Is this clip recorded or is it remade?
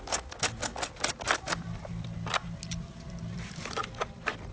recorded